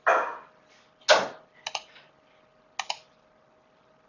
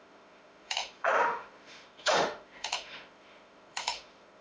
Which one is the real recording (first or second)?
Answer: first